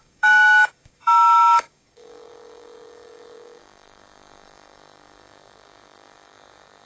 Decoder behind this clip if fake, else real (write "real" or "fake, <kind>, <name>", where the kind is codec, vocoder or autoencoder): fake, codec, DAC